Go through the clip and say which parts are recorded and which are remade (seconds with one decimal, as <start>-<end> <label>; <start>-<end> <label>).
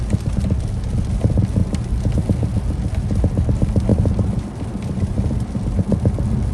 0.0-3.9 recorded; 3.9-5.4 remade; 5.4-6.5 recorded